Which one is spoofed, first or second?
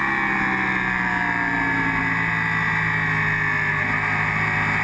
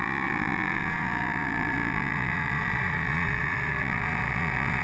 second